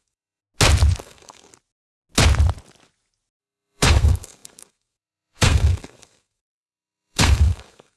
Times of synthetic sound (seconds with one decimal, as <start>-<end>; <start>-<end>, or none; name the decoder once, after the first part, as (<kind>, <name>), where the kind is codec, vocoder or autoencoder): 0.0-0.4 (codec, SNAC); 1.0-1.5; 3.4-8.0